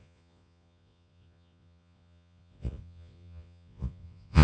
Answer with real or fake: fake